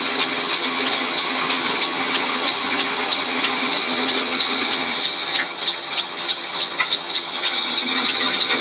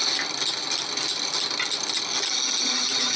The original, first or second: second